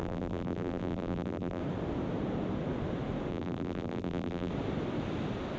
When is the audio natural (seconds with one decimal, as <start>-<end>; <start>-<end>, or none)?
1.6-3.3; 4.5-5.6